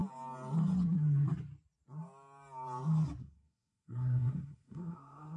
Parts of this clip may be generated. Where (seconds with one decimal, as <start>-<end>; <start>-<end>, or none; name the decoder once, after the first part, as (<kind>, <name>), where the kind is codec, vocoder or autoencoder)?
3.2-5.4 (codec, SNAC)